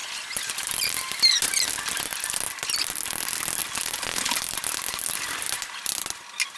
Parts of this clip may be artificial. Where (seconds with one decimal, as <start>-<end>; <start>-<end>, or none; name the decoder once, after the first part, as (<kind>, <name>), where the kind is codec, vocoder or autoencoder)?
none